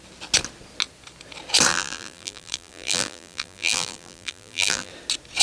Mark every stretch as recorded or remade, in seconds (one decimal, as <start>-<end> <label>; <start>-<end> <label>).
0.0-1.7 recorded; 1.7-4.9 remade; 4.9-5.4 recorded